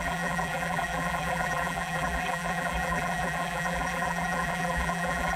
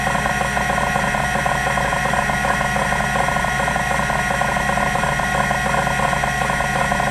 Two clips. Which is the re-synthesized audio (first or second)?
first